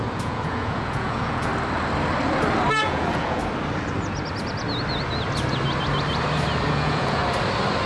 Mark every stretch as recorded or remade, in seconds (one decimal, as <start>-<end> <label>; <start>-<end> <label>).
0.0-1.5 remade; 1.5-2.8 recorded; 2.8-3.4 remade; 3.4-6.7 recorded; 6.7-7.2 remade; 7.2-7.9 recorded